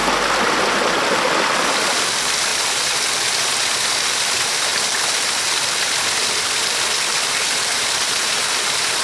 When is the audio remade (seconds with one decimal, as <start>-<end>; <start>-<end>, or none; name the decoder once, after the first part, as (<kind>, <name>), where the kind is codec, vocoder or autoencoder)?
1.0-2.5 (vocoder, BigVGAN v2); 4.0-4.7; 5.9-9.0